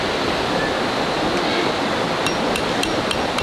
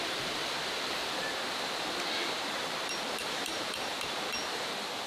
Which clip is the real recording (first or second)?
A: first